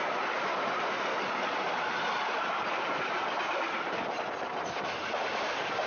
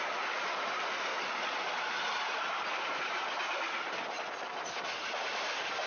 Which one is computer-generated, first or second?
first